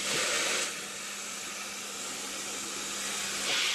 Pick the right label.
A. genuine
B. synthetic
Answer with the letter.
A